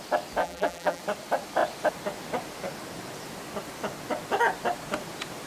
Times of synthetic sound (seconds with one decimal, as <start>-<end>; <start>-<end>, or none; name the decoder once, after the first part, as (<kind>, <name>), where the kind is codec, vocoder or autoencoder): 0.4-1.0 (vocoder, BigVGAN v2)